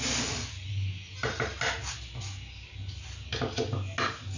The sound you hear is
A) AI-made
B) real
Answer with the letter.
B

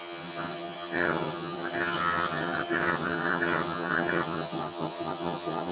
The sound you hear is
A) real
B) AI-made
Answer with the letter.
B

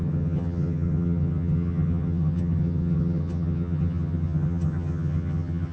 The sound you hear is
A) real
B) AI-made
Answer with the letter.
B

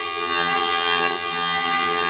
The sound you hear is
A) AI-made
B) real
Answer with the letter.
A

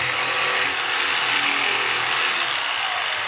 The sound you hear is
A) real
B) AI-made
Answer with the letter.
A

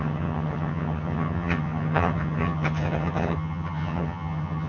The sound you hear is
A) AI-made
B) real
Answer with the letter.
A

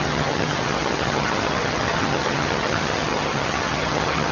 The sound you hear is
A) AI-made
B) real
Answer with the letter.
A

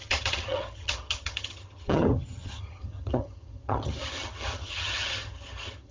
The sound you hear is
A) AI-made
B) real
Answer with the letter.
A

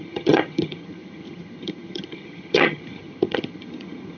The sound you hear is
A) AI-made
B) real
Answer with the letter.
A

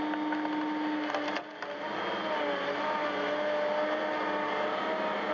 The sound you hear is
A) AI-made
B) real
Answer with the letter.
B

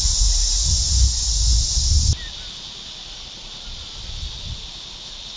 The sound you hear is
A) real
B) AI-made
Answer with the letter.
A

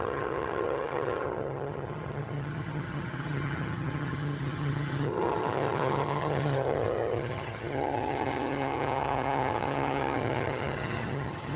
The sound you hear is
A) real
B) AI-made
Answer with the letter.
B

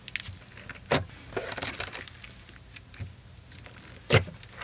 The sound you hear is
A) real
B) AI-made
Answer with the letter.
A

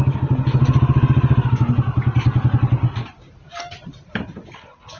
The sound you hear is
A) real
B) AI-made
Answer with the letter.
A